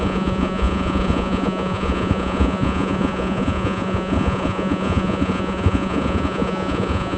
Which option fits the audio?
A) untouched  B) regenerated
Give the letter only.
B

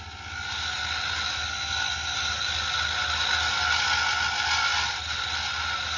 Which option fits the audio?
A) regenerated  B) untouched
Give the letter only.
B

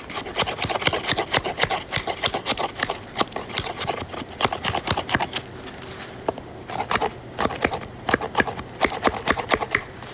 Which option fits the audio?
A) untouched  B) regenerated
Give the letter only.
A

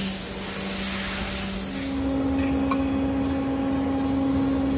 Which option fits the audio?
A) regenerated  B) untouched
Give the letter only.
B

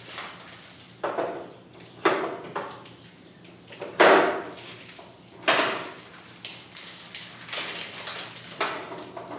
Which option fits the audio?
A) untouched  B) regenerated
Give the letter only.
A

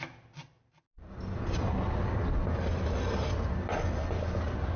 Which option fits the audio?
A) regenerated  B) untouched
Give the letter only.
B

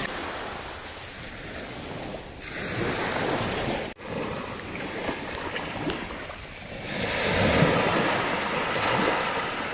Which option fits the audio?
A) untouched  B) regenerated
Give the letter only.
A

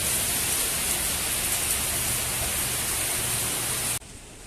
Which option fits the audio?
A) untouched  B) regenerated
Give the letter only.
A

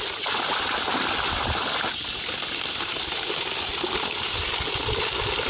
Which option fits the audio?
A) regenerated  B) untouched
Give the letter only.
B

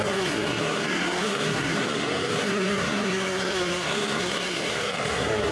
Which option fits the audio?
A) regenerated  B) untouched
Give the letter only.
A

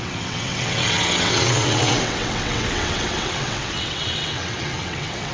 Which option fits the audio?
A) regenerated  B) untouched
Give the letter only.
A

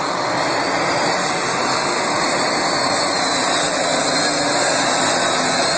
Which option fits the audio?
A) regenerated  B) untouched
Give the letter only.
B